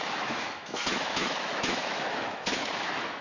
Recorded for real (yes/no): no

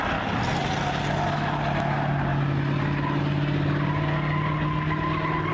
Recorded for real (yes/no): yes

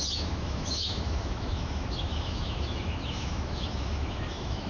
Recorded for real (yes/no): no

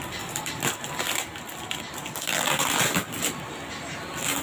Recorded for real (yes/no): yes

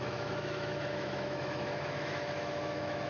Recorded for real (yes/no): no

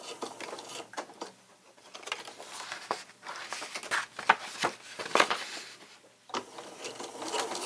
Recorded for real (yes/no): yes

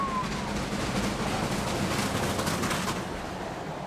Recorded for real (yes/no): yes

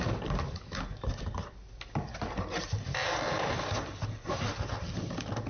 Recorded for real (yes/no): yes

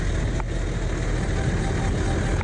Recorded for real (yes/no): yes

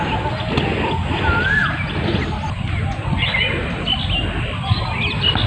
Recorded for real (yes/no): yes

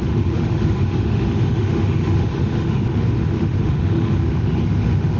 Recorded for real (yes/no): no